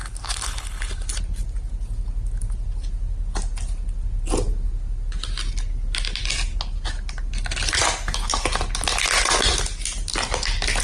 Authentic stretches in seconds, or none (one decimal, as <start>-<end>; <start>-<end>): 1.2-10.8